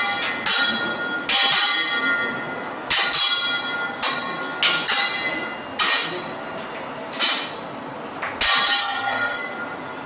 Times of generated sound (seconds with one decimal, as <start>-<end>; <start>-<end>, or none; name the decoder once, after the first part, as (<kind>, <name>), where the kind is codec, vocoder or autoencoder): 8.8-9.5 (codec, SNAC)